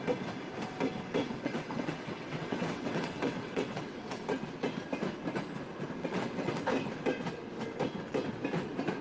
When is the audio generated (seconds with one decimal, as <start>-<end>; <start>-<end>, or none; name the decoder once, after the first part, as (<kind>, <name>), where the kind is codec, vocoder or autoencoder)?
1.2-4.2 (vocoder, WaveNeXt); 6.0-6.6